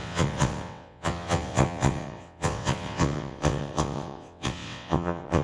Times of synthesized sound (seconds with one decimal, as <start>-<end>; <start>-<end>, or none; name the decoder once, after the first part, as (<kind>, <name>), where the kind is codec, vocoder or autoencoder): 0.0-5.4 (vocoder, WaveNeXt)